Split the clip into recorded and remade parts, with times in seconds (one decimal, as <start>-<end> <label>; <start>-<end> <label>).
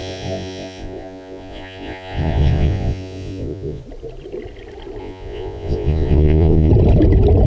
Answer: 0.0-3.8 remade; 3.8-5.0 recorded; 5.0-6.7 remade; 6.7-7.5 recorded